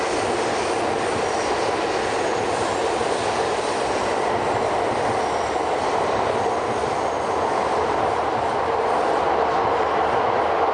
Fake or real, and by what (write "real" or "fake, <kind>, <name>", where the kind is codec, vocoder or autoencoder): real